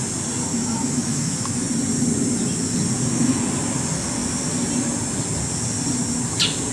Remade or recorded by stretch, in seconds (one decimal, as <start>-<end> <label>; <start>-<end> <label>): 0.0-0.5 recorded; 0.5-1.7 remade; 1.7-6.7 recorded